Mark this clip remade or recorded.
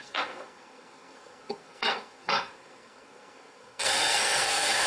remade